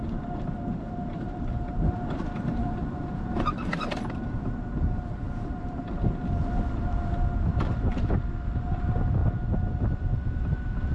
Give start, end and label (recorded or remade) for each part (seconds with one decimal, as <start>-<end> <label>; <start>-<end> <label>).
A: 0.0-0.7 recorded; 0.7-5.8 remade; 5.8-10.9 recorded